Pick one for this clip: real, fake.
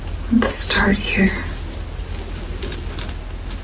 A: real